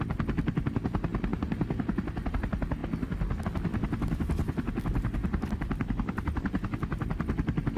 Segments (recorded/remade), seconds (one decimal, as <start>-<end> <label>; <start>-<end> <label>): 0.0-5.2 recorded; 5.2-6.4 remade; 6.4-7.8 recorded